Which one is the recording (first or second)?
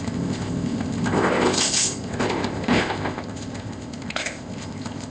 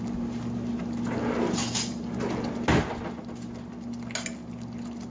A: second